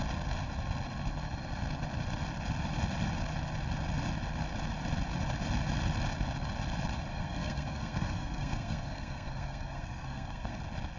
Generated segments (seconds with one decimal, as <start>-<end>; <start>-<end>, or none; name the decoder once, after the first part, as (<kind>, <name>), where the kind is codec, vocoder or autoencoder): 7.1-10.6 (codec, SNAC)